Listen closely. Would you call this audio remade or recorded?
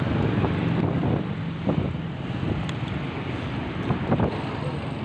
recorded